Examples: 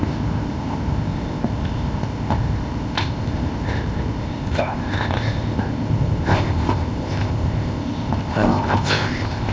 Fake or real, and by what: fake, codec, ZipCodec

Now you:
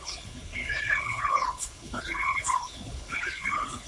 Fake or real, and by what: fake, codec, HILCodec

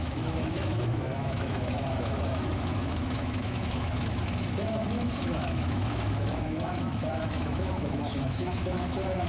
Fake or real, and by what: fake, autoencoder, DAC-VAE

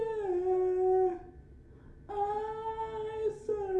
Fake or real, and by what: real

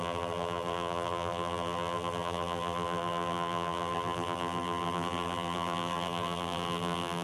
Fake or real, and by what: fake, vocoder, BigVGAN v2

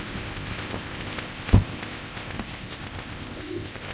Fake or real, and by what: fake, codec, ZipCodec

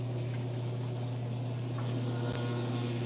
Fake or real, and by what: real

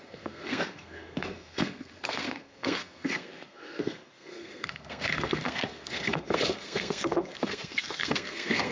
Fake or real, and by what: fake, codec, SNAC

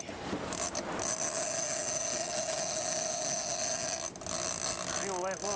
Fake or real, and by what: real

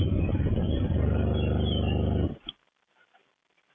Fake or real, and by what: real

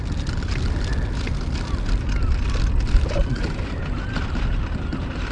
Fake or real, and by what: real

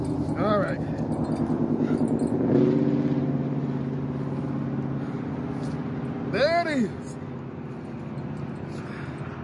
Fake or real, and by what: real